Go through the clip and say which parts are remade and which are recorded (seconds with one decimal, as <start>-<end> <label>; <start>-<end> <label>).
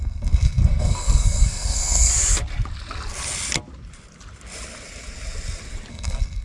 0.0-2.1 remade; 2.1-5.9 recorded; 5.9-6.4 remade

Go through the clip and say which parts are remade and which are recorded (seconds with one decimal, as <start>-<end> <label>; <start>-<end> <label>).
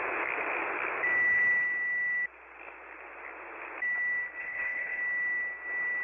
0.0-4.4 recorded; 4.4-5.0 remade; 5.0-6.0 recorded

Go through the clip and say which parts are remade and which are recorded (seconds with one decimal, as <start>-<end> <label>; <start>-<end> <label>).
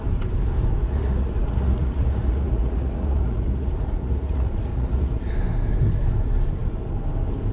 0.0-0.8 recorded; 0.8-5.3 remade; 5.3-7.5 recorded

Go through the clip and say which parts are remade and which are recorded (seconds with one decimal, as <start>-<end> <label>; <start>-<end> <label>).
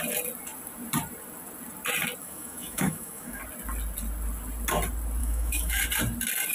0.0-2.2 recorded; 2.2-3.4 remade; 3.4-5.2 recorded; 5.2-5.8 remade; 5.8-6.5 recorded